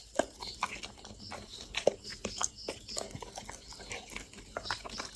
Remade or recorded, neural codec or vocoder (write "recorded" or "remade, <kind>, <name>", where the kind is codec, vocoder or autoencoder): recorded